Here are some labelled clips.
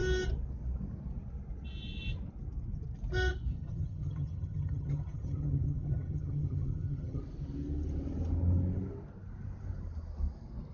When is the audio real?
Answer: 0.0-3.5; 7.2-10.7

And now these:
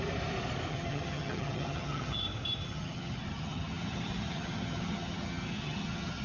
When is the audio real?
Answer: 0.0-0.7; 2.2-2.6

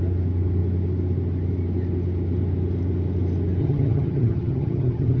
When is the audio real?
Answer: 0.0-3.6

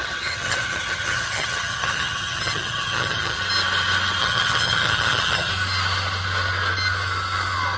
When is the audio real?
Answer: 3.4-4.2; 5.5-7.8

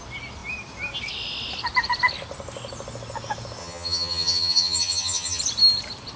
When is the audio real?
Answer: 0.0-3.6; 5.4-6.2

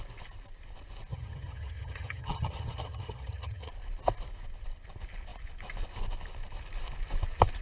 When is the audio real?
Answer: 0.0-1.1; 3.7-7.6

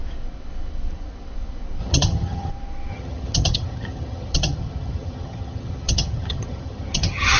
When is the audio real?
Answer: 0.0-1.8; 2.5-2.9